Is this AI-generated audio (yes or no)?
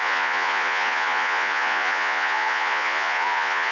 yes